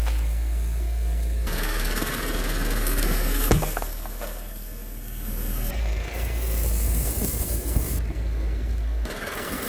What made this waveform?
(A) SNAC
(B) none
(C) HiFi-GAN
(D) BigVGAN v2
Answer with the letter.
A